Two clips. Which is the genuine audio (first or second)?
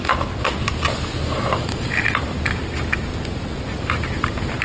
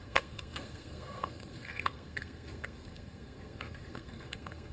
first